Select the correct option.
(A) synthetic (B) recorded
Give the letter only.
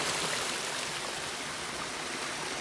B